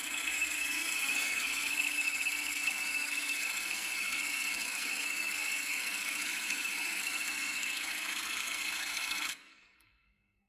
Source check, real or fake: fake